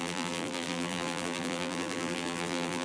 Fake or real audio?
fake